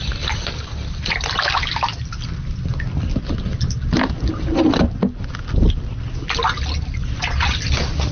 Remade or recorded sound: recorded